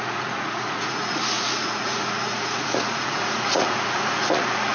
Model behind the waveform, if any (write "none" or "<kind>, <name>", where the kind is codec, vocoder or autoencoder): vocoder, Vocos